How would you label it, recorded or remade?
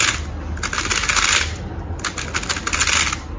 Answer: recorded